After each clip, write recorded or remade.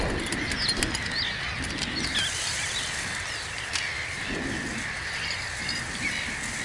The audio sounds recorded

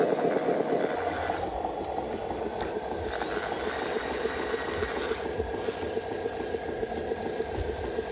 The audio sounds remade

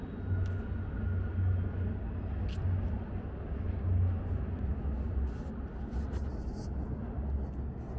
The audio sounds recorded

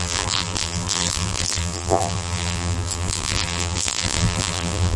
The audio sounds remade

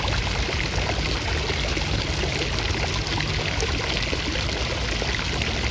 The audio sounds recorded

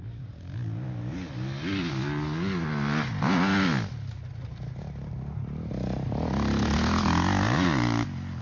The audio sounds recorded